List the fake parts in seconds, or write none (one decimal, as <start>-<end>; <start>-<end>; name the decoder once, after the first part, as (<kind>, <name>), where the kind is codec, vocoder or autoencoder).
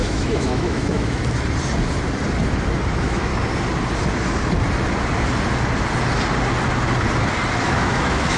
0.0-1.2 (autoencoder, DAC-VAE); 2.9-3.3; 7.6-8.4